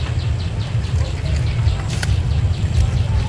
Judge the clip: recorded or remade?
recorded